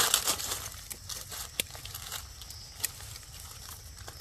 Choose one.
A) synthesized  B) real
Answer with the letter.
B